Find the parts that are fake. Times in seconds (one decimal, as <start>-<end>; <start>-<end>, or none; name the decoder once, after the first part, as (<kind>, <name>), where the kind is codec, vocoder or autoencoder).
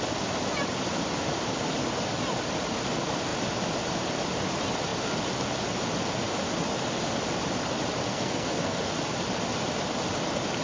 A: 8.1-8.8 (codec, SNAC)